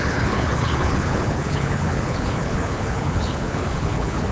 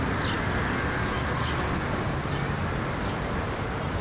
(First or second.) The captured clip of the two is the second